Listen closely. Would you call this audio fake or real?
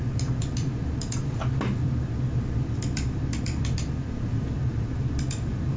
fake